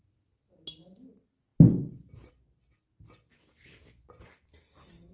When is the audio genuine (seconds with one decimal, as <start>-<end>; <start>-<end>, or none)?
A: 0.0-5.1